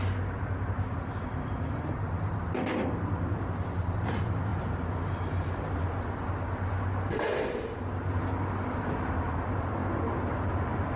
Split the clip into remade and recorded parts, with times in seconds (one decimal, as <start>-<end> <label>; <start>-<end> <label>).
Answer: 0.0-4.5 recorded; 4.5-5.1 remade; 5.1-9.8 recorded; 9.8-11.0 remade